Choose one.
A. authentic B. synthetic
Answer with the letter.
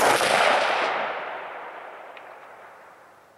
B